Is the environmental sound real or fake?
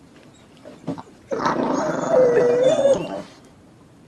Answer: fake